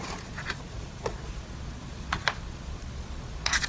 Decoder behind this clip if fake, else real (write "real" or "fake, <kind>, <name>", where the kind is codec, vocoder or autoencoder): fake, vocoder, Vocos